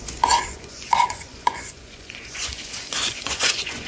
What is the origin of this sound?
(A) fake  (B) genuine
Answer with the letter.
A